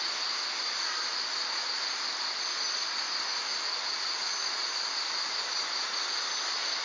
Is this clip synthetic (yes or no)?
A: no